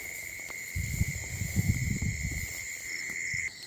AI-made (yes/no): yes